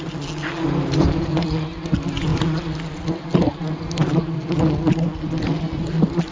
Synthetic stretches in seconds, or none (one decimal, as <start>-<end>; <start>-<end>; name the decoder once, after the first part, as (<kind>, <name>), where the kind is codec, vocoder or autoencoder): none